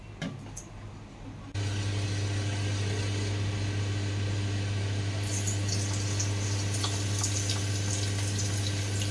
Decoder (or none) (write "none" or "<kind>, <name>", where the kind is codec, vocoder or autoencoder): none